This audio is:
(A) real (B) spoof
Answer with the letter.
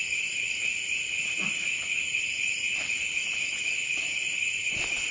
A